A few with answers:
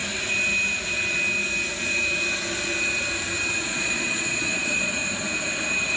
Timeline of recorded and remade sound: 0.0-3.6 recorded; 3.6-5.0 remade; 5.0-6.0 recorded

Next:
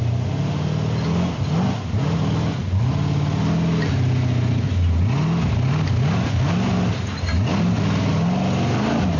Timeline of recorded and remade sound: 0.0-9.2 recorded